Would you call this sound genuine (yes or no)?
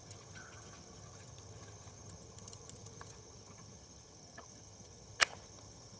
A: no